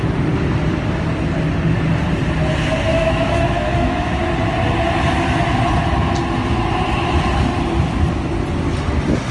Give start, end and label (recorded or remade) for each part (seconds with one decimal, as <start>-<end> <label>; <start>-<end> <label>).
0.0-2.9 recorded; 2.9-4.2 remade; 4.2-9.3 recorded

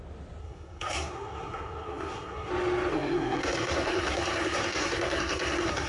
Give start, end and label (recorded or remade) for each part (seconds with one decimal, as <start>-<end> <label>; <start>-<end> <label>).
0.0-0.4 recorded; 0.4-2.5 remade; 2.5-2.9 recorded; 2.9-5.9 remade

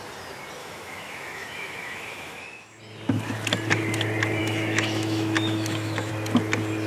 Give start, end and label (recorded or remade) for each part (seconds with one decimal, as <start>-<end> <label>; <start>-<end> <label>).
0.0-0.6 recorded; 0.6-2.8 remade; 2.8-4.4 recorded; 4.4-6.1 remade; 6.1-6.9 recorded

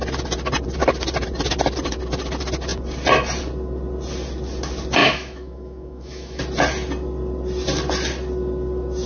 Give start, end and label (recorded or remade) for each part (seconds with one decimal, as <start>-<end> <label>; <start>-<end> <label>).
0.0-5.0 recorded; 5.0-6.4 remade; 6.4-9.1 recorded

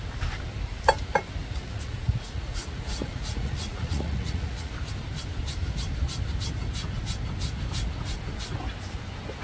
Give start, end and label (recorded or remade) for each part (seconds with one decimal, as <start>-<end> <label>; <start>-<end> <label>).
0.0-1.4 recorded; 1.4-4.7 remade; 4.7-9.4 recorded

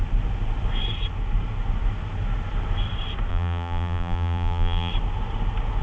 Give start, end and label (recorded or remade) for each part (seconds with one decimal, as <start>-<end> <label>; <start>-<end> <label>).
0.0-3.3 recorded; 3.3-4.9 remade; 4.9-5.8 recorded

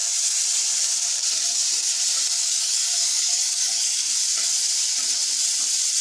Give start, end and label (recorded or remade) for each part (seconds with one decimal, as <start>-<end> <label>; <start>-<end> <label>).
0.0-2.4 recorded; 2.4-4.2 remade; 4.2-6.0 recorded